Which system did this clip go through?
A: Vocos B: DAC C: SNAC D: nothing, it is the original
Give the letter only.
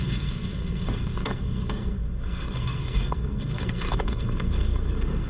C